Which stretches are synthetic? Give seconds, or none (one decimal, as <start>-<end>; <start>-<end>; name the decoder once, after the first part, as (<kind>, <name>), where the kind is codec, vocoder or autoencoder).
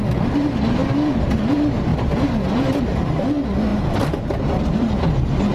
none